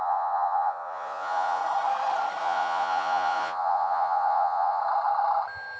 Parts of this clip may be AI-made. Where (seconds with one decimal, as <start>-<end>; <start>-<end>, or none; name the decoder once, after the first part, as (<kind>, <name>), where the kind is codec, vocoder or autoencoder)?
0.0-1.6 (vocoder, Vocos); 2.4-4.8